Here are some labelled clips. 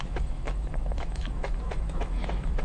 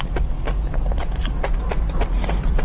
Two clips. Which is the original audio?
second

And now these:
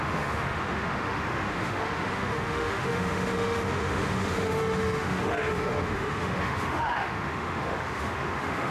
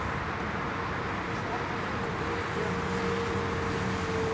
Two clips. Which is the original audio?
second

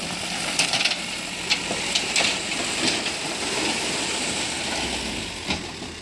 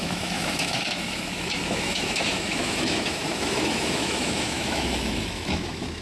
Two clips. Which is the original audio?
first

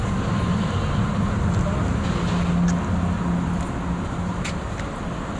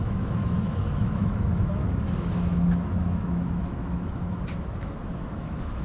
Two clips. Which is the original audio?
first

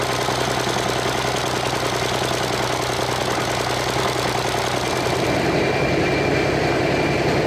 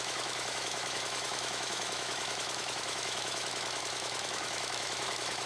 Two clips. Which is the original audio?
first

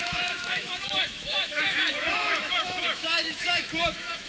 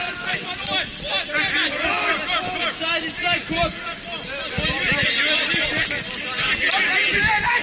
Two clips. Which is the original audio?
second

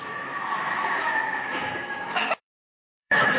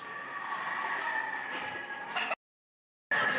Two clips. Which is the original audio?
second